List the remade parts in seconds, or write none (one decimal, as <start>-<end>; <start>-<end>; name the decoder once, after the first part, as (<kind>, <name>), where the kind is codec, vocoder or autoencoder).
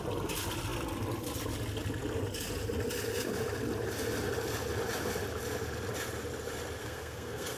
6.8-7.6 (codec, SNAC)